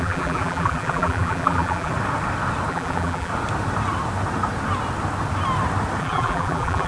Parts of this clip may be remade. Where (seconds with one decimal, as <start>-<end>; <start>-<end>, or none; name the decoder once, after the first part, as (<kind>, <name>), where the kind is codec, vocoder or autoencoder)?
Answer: 0.0-1.9 (vocoder, BigVGAN v2); 2.7-3.3; 6.0-6.9